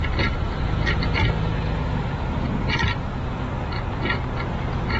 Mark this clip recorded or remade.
recorded